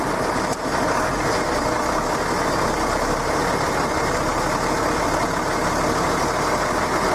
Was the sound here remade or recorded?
recorded